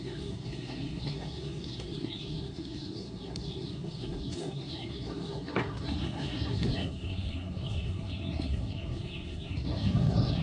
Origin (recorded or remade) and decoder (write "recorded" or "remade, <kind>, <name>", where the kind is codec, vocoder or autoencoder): remade, codec, SNAC